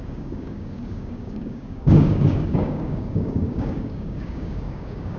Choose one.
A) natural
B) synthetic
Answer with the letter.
B